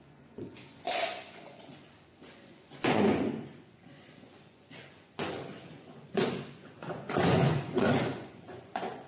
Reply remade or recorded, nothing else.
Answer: remade